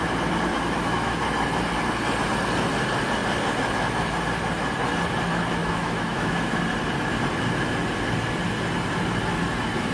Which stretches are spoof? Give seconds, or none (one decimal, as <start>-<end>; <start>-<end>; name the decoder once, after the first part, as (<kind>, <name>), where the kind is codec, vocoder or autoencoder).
0.5-1.2 (autoencoder, DAC-VAE); 5.6-6.6

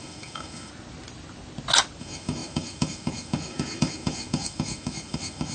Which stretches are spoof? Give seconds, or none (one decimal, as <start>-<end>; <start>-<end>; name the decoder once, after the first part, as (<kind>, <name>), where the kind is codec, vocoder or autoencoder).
0.0-0.7 (autoencoder, DAC-VAE); 2.0-5.5

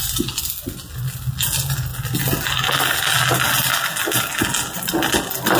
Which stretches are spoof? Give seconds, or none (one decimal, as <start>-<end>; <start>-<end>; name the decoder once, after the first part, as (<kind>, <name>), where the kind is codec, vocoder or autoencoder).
none

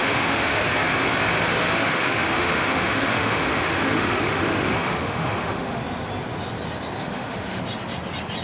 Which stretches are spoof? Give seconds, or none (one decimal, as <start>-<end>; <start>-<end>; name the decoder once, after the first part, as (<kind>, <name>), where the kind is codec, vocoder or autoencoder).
0.0-0.6 (autoencoder, DAC-VAE); 1.6-5.8; 7.0-7.6